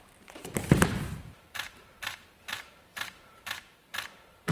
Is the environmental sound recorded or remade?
remade